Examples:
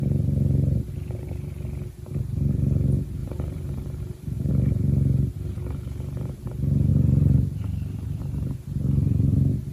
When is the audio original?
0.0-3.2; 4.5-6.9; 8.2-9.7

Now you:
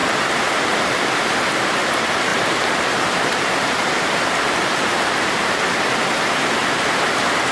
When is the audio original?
1.7-2.3; 5.6-6.6

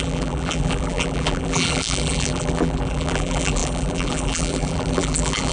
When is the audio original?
none

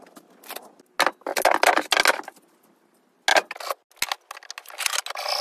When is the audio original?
0.0-5.4

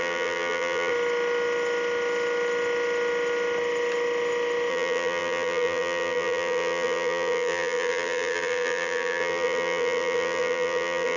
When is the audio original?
0.9-4.7

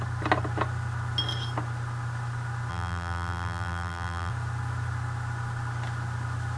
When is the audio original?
0.0-2.7; 4.3-6.6

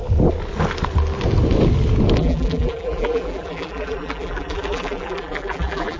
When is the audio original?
0.0-2.2

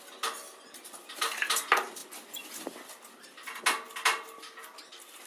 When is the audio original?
0.0-5.3